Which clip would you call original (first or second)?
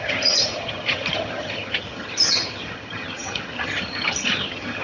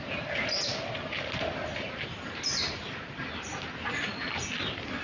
second